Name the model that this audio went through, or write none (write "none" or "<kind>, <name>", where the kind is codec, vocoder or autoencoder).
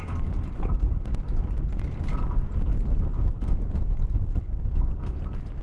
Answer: vocoder, BigVGAN v2